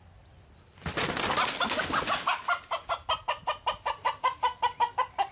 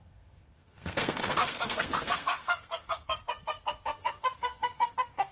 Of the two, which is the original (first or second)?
first